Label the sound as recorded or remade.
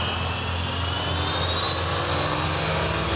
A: recorded